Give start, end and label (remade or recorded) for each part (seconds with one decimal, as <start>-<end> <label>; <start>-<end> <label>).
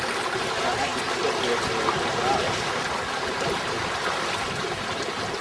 0.0-5.4 recorded